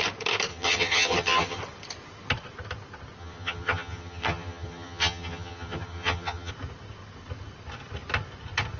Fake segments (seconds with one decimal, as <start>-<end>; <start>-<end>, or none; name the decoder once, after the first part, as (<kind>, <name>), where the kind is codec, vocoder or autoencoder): 0.5-1.6 (vocoder, HiFi-GAN); 3.2-6.5

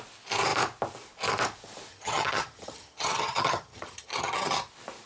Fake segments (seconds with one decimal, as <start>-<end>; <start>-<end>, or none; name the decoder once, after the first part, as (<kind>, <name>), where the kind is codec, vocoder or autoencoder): 1.9-4.6 (vocoder, HiFi-GAN)

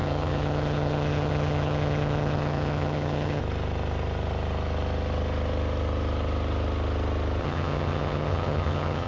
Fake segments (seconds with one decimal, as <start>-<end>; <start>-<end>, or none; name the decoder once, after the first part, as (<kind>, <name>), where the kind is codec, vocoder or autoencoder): 0.0-3.4 (vocoder, HiFi-GAN); 7.4-9.1

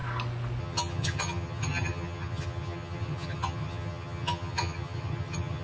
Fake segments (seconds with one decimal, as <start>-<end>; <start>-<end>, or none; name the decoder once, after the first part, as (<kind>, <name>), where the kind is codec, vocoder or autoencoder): 0.6-5.6 (vocoder, HiFi-GAN)